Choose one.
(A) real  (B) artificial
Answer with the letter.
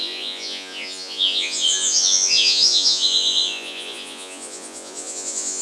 B